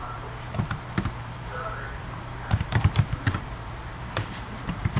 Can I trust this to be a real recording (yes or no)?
no